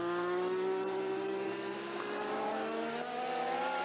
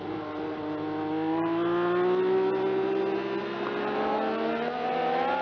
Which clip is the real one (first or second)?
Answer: second